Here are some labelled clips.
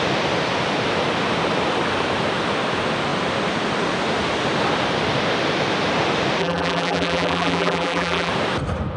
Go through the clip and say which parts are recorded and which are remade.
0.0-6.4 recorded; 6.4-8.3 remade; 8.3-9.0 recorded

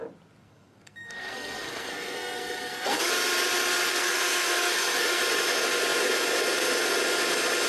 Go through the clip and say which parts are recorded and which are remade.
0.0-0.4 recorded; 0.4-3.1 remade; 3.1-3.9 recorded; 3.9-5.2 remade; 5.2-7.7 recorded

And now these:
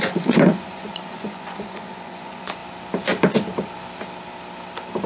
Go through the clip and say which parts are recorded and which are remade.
0.0-2.6 remade; 2.6-5.1 recorded